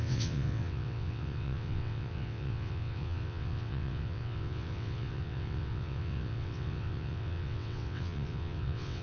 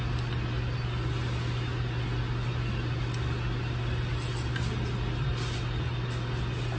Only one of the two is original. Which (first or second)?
second